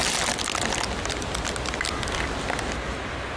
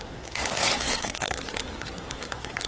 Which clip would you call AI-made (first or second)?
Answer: second